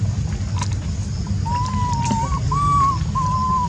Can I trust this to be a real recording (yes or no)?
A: yes